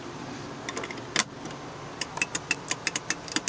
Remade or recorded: recorded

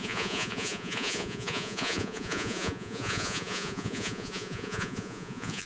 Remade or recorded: remade